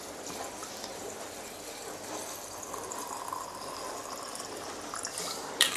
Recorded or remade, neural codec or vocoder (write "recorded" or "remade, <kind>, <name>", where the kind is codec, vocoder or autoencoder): remade, vocoder, BigVGAN v2